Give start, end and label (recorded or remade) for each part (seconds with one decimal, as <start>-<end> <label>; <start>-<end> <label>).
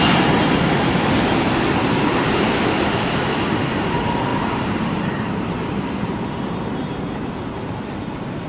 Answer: 0.0-4.3 recorded; 4.3-7.3 remade; 7.3-8.5 recorded